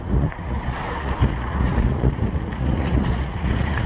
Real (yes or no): no